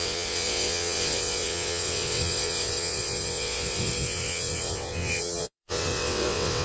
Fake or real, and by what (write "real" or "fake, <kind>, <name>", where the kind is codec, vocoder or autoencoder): fake, vocoder, WaveNeXt